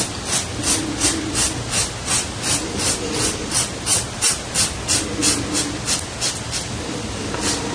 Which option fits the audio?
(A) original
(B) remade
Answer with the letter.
A